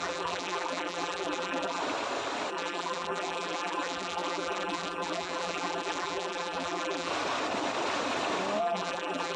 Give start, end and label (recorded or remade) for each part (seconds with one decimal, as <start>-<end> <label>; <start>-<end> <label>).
0.0-1.8 remade; 1.8-2.5 recorded; 2.5-7.1 remade; 7.1-8.6 recorded; 8.6-9.4 remade